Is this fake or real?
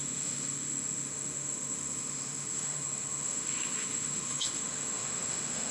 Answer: fake